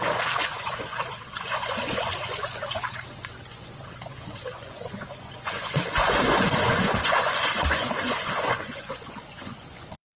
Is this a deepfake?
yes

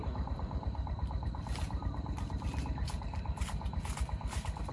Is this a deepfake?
no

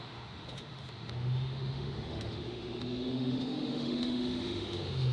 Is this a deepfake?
yes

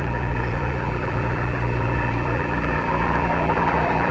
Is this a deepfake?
yes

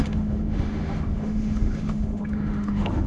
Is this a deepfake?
yes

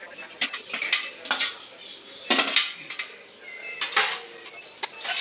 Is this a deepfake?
no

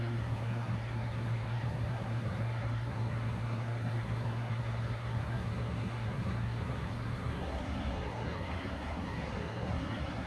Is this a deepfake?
yes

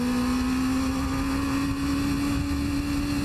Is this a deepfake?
no